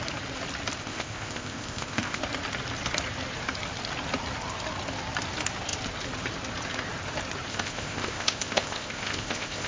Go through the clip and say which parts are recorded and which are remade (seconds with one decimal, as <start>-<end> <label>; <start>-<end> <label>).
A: 0.0-0.8 recorded; 0.8-2.2 remade; 2.2-7.5 recorded; 7.5-9.7 remade